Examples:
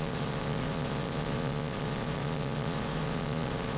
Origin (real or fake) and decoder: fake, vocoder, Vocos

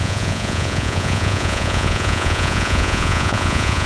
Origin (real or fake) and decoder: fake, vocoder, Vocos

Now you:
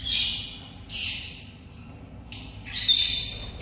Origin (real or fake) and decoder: real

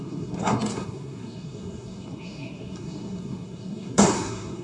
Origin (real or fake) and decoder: fake, codec, SNAC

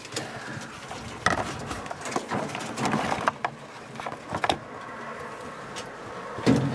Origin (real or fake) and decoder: real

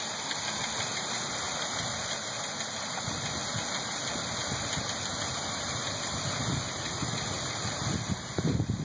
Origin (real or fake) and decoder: real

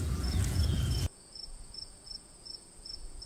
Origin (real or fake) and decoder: fake, vocoder, Vocos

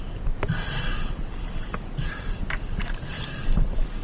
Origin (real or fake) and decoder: real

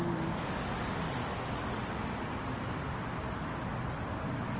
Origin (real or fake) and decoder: real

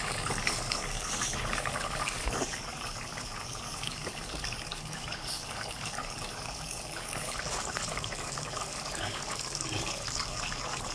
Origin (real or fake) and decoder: fake, codec, DAC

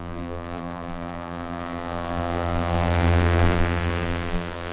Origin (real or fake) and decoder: fake, vocoder, BigVGAN v2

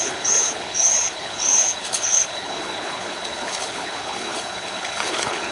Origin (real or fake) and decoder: fake, codec, HILCodec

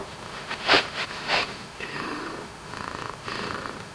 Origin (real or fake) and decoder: fake, autoencoder, DAC-VAE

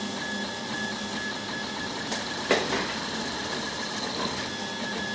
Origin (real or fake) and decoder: real